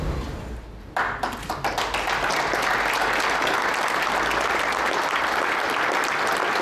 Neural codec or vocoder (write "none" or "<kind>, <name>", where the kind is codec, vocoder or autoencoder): none